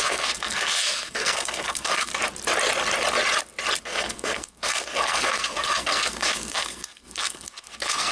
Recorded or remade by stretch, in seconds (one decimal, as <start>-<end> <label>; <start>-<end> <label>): 0.0-2.1 remade; 2.1-3.8 recorded; 3.8-8.1 remade